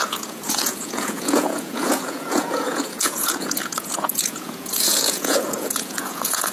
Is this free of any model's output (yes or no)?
no